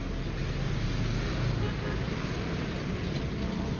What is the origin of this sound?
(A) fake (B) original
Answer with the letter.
B